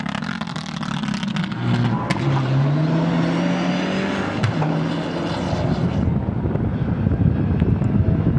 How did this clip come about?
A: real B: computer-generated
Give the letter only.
A